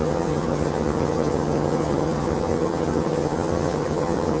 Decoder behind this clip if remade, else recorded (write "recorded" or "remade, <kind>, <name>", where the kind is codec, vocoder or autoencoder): remade, vocoder, HiFi-GAN